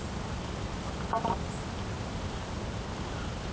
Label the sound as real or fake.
real